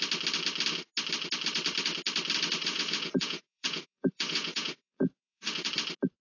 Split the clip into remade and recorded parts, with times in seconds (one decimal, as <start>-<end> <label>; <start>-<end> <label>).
0.0-2.6 recorded; 2.6-5.7 remade; 5.7-6.3 recorded